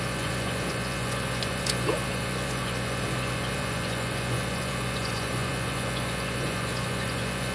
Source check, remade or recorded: remade